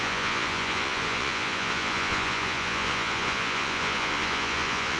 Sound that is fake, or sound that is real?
fake